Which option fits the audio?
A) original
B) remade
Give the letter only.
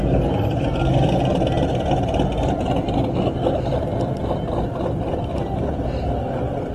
A